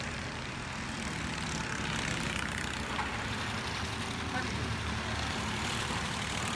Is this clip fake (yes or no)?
no